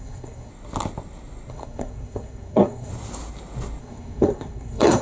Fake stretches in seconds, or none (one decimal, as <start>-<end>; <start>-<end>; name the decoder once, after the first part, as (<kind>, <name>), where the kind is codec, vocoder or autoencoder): 0.0-0.5 (codec, SNAC); 1.5-2.9; 3.8-5.0